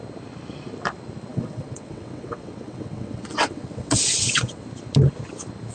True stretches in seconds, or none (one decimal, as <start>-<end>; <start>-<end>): 0.0-1.3; 4.6-5.7

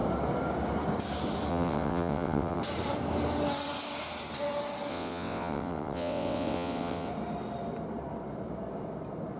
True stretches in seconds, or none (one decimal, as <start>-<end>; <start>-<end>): 0.0-1.5; 2.6-4.9; 7.1-9.4